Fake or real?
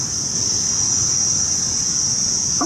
real